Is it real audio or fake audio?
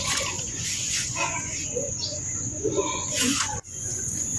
fake